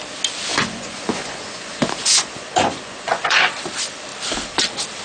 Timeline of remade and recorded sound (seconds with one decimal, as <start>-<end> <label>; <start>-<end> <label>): 0.0-0.5 recorded; 0.5-3.5 remade; 3.5-5.0 recorded